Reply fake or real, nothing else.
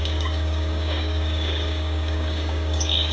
fake